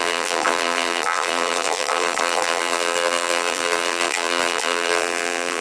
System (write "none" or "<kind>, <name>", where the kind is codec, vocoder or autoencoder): vocoder, BigVGAN v2